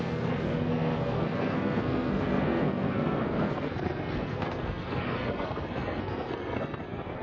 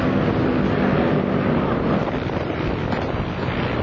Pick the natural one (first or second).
second